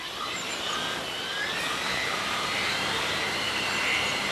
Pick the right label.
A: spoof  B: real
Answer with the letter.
A